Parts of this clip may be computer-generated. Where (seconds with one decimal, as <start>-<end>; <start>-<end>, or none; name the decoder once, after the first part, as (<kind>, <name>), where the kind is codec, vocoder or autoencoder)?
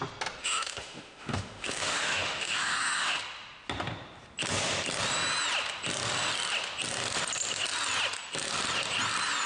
0.4-3.2 (autoencoder, DAC-VAE)